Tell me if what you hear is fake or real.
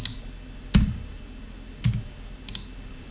real